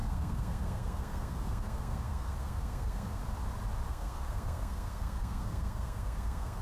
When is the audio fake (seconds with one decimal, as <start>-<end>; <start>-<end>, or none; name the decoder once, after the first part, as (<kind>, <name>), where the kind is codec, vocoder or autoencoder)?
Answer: 0.0-3.2 (codec, SNAC); 3.9-6.6